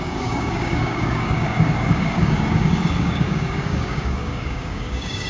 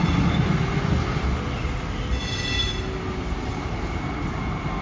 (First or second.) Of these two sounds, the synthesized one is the first